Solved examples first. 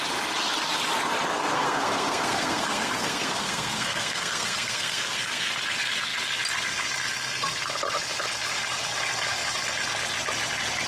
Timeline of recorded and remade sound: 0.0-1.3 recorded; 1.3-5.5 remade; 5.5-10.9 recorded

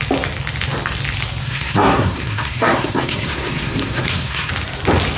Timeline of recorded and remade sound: 0.0-1.4 recorded; 1.4-4.5 remade; 4.5-5.2 recorded

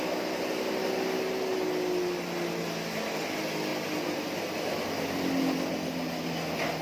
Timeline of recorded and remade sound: 0.0-6.8 recorded

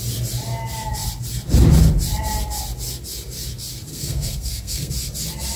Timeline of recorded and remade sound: 0.0-3.9 recorded; 3.9-4.9 remade; 4.9-5.6 recorded

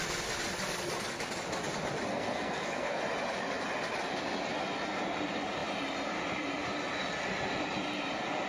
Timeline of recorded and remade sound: 0.0-2.1 recorded; 2.1-3.0 remade; 3.0-8.5 recorded

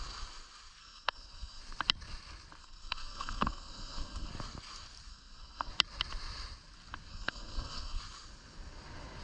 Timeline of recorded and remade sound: 0.0-0.8 recorded; 0.8-1.6 remade; 1.6-2.6 recorded; 2.6-4.3 remade; 4.3-5.1 recorded; 5.1-5.7 remade; 5.7-7.1 recorded; 7.1-8.0 remade; 8.0-9.2 recorded

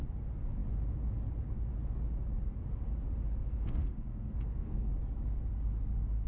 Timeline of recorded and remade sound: 0.0-3.5 recorded; 3.5-4.9 remade; 4.9-6.3 recorded